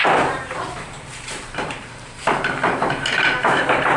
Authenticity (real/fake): fake